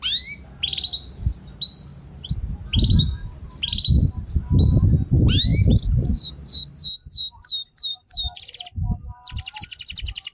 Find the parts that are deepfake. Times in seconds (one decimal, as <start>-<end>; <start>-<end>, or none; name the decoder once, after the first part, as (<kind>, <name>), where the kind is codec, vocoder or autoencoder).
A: none